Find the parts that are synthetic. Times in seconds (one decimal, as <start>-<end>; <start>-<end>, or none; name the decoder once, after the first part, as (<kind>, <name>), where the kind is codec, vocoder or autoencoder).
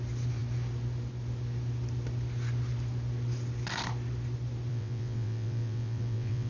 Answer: 4.7-6.5 (vocoder, WaveNeXt)